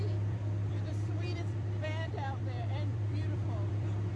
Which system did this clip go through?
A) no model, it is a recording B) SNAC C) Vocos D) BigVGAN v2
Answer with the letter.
D